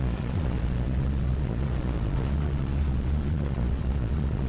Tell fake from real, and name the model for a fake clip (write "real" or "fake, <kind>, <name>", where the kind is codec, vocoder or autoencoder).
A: fake, vocoder, Vocos